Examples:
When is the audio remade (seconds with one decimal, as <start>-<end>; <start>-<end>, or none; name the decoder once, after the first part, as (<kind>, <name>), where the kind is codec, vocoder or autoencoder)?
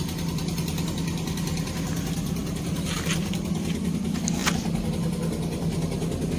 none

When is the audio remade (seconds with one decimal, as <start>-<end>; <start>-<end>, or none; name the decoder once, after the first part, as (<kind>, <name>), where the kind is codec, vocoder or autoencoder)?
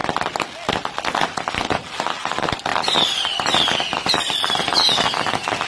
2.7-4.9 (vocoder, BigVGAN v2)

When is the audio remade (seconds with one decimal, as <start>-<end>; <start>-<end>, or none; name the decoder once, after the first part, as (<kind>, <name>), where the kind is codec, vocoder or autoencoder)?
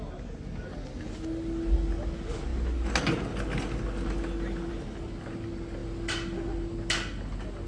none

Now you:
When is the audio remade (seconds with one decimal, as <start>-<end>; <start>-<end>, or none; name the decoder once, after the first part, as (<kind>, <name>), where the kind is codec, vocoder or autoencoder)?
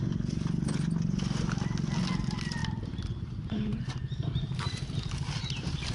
2.6-3.3 (vocoder, BigVGAN v2)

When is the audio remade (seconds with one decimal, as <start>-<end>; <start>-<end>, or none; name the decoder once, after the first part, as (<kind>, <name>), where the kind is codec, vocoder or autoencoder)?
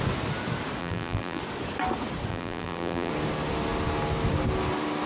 0.8-1.4 (vocoder, BigVGAN v2); 2.3-3.1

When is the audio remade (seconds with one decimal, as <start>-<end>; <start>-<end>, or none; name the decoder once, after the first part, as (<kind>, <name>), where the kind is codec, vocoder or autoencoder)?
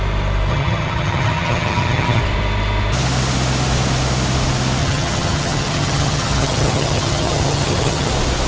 0.5-2.2 (vocoder, HiFi-GAN); 4.8-8.1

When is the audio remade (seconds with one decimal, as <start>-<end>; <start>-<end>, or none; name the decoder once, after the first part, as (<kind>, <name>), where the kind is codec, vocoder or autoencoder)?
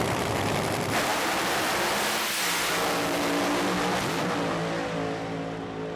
none